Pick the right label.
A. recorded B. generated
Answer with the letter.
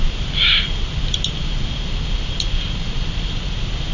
A